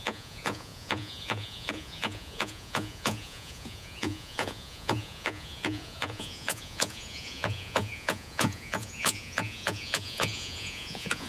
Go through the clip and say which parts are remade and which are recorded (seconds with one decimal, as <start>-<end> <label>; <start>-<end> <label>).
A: 0.0-11.3 remade